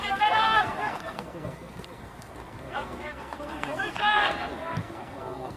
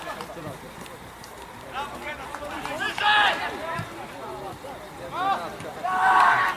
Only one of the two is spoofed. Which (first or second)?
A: first